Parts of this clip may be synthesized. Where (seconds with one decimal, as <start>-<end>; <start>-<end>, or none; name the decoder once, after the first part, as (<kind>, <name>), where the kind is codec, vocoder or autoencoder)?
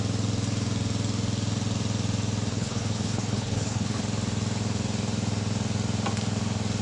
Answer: 2.5-4.0 (codec, HILCodec)